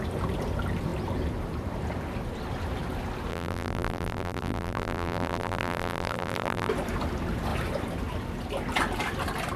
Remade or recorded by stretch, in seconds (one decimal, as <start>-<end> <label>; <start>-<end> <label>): 0.0-3.3 recorded; 3.3-6.7 remade; 6.7-9.6 recorded